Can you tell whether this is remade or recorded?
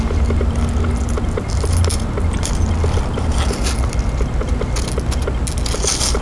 recorded